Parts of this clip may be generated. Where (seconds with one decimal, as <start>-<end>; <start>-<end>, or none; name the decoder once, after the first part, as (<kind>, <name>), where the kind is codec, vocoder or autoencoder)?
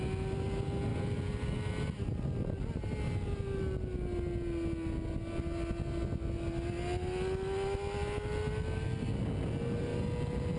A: none